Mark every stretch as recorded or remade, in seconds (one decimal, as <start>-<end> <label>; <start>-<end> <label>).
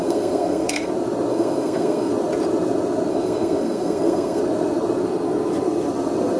0.0-0.9 remade; 0.9-1.3 recorded; 1.3-2.1 remade; 2.1-3.1 recorded; 3.1-4.4 remade; 4.4-6.4 recorded